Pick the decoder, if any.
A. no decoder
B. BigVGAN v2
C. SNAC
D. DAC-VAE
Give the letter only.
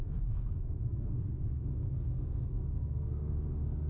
C